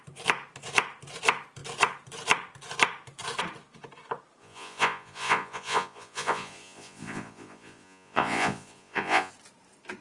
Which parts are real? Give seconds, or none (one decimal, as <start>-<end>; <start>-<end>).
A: 0.0-4.4; 9.3-10.0